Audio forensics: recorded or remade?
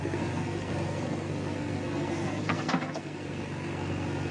remade